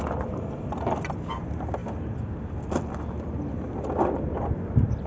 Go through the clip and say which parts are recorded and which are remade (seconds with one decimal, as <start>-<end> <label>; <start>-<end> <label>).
0.0-5.1 recorded